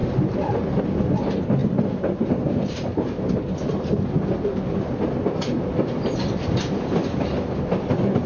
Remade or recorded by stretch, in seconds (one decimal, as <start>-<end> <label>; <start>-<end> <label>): 0.0-1.6 recorded; 1.6-3.4 remade; 3.4-5.7 recorded; 5.7-7.6 remade; 7.6-8.3 recorded